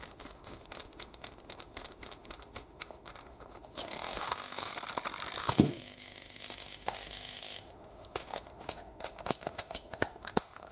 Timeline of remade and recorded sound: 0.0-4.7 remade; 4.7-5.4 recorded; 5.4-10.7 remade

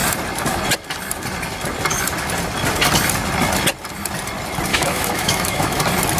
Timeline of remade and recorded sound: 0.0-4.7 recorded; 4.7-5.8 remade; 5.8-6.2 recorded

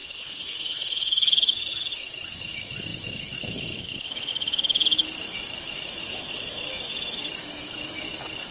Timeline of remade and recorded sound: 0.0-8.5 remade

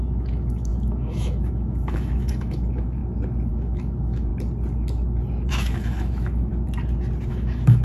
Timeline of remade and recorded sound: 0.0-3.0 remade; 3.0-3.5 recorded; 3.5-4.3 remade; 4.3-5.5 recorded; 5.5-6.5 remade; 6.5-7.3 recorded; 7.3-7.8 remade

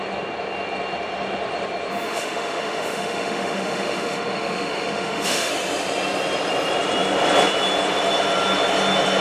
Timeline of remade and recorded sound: 0.0-1.9 recorded; 1.9-5.5 remade; 5.5-9.2 recorded

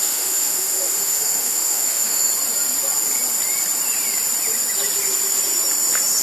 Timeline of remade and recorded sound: 0.0-2.3 remade; 2.3-6.2 recorded

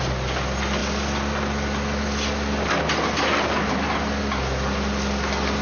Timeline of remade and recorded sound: 0.0-5.6 recorded